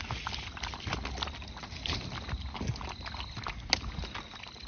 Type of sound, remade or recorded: recorded